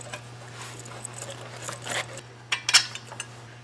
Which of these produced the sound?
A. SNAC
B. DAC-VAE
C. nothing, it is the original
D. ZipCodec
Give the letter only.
C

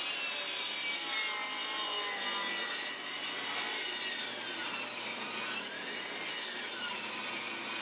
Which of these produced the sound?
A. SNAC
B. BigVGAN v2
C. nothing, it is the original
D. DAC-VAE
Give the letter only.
C